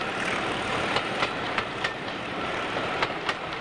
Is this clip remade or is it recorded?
remade